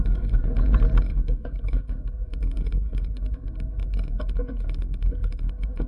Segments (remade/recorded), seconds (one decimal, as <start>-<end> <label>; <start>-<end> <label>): 0.0-0.4 remade; 0.4-1.0 recorded; 1.0-5.9 remade